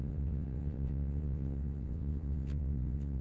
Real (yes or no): no